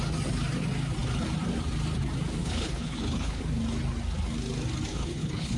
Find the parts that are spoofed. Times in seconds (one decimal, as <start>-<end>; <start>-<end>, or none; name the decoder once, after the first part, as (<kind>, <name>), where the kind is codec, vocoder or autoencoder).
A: 2.4-3.4 (codec, HILCodec); 4.9-5.6